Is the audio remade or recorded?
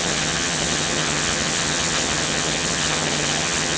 remade